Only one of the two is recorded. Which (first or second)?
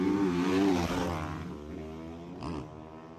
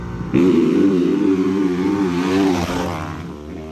first